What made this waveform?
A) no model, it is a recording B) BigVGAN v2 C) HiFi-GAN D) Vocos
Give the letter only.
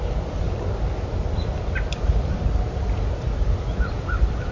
A